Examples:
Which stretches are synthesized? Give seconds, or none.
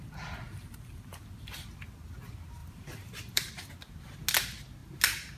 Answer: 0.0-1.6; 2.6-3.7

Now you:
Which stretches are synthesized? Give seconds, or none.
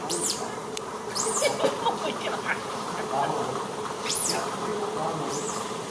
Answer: 0.0-4.7; 5.3-5.9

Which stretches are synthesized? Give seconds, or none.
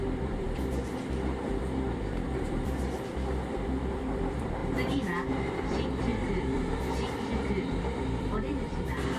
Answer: 0.0-9.2